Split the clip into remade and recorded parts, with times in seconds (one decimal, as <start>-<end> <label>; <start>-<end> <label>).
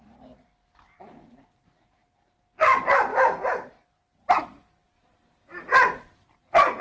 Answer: 0.0-3.1 recorded; 3.1-4.4 remade; 4.4-6.8 recorded